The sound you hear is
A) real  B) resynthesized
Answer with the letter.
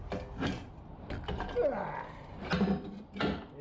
A